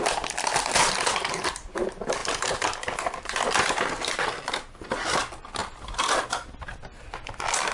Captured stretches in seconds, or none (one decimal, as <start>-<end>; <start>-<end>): 0.0-7.7